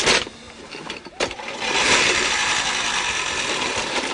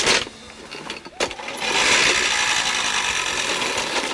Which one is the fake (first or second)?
first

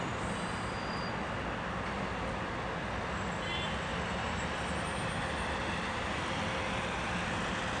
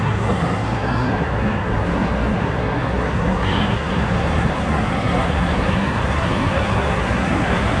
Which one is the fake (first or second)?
second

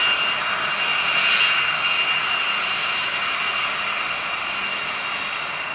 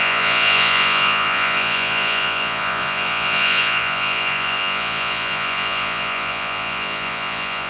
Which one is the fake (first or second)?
second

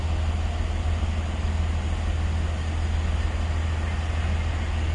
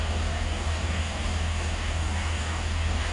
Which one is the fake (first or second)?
second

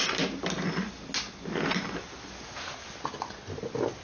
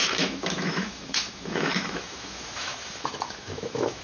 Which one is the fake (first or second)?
second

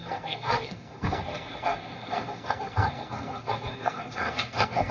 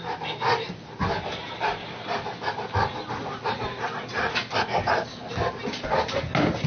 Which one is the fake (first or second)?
first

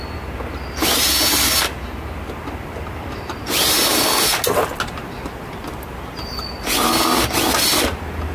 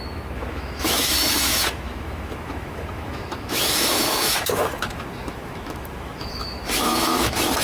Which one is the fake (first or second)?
second